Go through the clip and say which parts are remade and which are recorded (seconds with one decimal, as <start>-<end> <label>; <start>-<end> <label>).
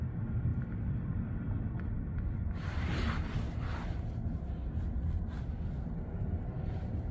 0.0-0.5 recorded; 0.5-4.5 remade; 4.5-7.1 recorded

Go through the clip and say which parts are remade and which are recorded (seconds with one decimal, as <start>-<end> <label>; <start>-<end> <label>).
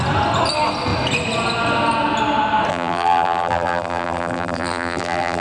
0.0-2.7 recorded; 2.7-5.4 remade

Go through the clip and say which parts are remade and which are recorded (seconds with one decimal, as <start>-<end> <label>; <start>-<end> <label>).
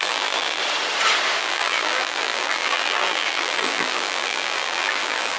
0.0-0.6 remade; 0.6-1.4 recorded; 1.4-5.4 remade